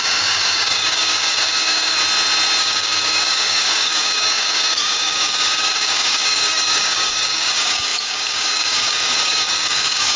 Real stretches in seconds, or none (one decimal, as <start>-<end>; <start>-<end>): 2.0-2.6